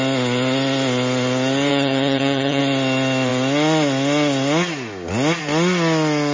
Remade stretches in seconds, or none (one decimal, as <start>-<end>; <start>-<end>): 1.7-2.6